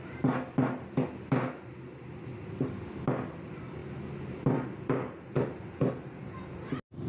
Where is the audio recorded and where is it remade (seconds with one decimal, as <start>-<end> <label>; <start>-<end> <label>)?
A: 0.0-7.1 recorded